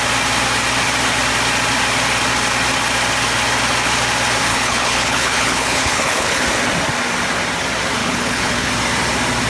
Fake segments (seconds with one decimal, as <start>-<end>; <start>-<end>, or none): 4.5-6.4; 8.0-8.7